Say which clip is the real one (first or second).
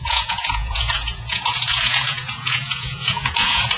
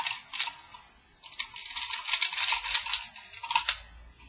second